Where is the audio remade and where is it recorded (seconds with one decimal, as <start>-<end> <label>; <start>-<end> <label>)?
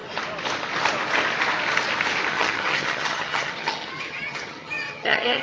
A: 0.0-2.3 recorded; 2.3-5.4 remade